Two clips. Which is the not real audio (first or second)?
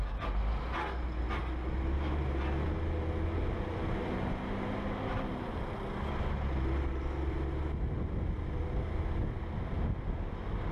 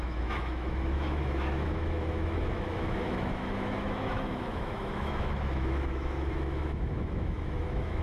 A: second